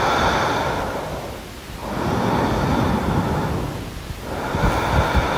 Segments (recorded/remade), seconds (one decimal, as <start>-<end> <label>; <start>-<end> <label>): 0.0-5.4 recorded